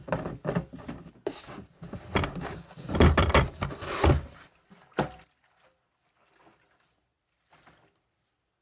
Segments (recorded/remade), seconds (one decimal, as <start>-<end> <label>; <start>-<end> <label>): 0.0-8.6 recorded